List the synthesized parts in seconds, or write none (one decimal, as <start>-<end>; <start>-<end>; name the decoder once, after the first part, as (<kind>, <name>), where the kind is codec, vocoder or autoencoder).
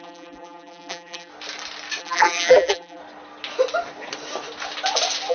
0.0-1.3 (vocoder, BigVGAN v2); 2.0-3.0